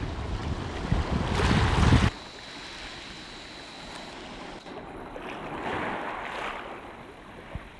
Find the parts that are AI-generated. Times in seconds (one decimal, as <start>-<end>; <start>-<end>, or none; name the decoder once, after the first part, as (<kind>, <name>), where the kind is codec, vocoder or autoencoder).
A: none